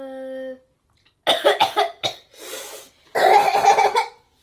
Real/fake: real